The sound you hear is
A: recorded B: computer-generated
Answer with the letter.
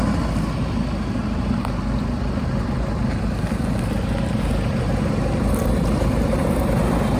A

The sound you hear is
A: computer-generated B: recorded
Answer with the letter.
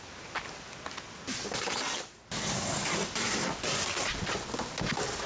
B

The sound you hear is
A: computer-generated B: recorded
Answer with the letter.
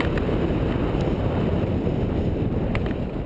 B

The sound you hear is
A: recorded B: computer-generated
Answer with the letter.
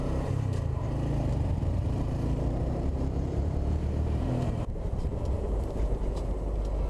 B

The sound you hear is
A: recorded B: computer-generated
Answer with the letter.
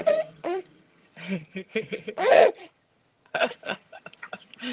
B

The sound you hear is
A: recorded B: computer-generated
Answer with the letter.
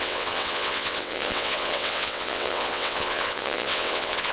B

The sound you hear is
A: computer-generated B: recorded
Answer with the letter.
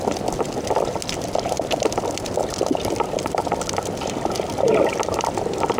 B